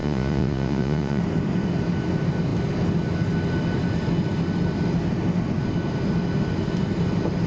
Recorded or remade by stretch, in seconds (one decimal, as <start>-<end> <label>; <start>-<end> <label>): 0.0-1.2 remade; 1.2-7.5 recorded